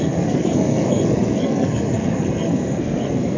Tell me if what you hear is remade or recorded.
remade